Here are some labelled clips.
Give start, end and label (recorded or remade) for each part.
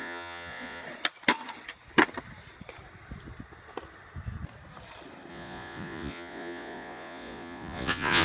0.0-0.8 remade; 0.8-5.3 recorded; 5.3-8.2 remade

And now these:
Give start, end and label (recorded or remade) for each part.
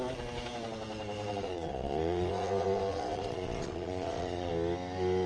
0.0-1.3 recorded; 1.3-4.5 remade; 4.5-5.3 recorded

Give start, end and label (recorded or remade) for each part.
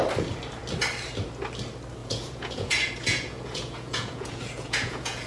0.0-2.0 recorded; 2.0-5.3 remade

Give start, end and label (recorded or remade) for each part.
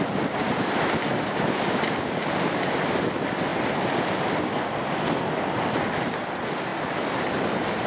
0.0-7.9 recorded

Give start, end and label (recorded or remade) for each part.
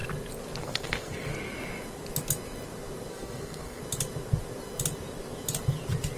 0.0-0.6 recorded; 0.6-1.3 remade; 1.3-3.1 recorded; 3.1-3.8 remade; 3.8-6.2 recorded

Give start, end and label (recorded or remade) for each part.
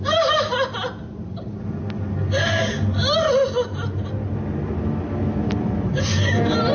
0.0-6.7 recorded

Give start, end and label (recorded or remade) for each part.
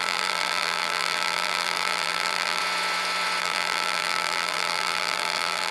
0.0-2.6 remade; 2.6-3.4 recorded; 3.4-5.7 remade